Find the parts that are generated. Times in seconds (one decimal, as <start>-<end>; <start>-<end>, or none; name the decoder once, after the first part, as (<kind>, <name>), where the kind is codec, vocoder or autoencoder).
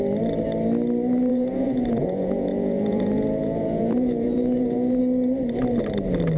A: 1.3-5.0 (vocoder, Vocos)